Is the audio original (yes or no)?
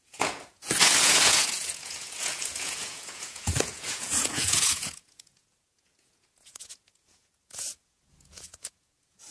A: no